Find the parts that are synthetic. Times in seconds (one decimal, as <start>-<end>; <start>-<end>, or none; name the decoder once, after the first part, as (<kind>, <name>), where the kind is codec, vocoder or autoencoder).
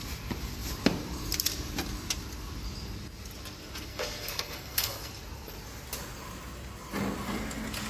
3.9-5.1 (codec, SNAC)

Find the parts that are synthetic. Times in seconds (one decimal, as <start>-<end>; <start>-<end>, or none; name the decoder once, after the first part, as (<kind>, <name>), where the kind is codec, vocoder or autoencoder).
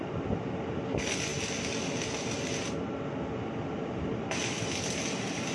none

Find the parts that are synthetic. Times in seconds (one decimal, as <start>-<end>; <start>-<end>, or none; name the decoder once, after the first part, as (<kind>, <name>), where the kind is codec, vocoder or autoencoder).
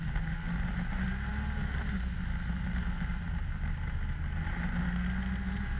none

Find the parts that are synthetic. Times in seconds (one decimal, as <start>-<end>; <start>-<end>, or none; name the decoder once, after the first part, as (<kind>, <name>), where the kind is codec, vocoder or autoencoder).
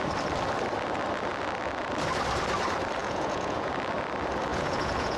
3.0-3.7 (vocoder, Vocos); 4.5-5.2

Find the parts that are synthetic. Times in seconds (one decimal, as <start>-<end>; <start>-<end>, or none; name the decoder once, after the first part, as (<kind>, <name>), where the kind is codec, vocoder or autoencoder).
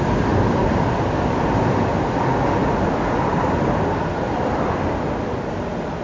none